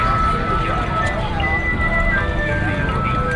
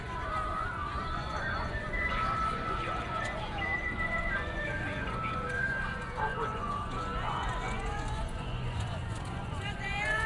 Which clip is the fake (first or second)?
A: second